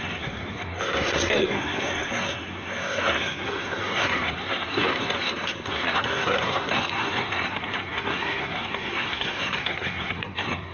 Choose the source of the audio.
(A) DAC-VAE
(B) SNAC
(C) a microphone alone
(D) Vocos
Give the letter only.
B